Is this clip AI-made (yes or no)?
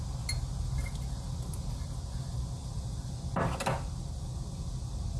no